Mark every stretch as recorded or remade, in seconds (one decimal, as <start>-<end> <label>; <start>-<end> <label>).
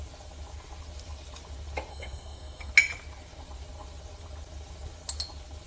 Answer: 0.0-1.9 recorded; 1.9-2.7 remade; 2.7-5.7 recorded